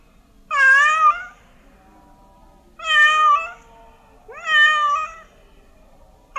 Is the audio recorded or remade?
recorded